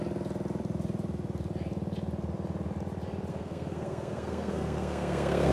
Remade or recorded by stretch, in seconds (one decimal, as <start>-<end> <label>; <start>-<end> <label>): 0.0-3.3 recorded; 3.3-5.5 remade